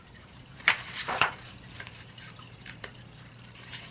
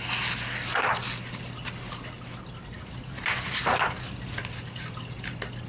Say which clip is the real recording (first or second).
second